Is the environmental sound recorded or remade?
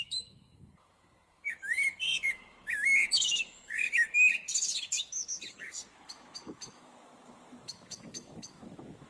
remade